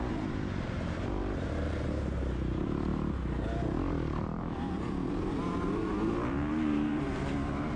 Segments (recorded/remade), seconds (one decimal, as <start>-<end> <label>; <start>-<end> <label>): 0.0-2.9 remade; 2.9-5.1 recorded; 5.1-7.8 remade